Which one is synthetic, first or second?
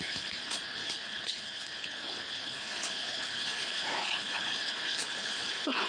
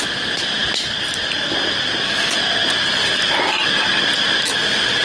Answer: first